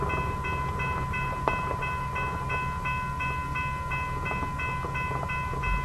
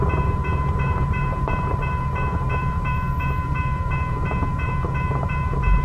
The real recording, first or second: first